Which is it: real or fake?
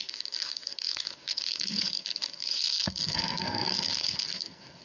fake